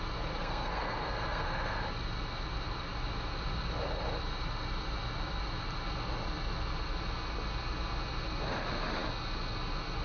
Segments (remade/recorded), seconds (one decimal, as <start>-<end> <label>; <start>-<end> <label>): 0.0-0.4 recorded; 0.4-1.8 remade; 1.8-10.0 recorded